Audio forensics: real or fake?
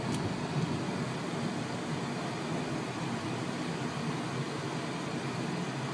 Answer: real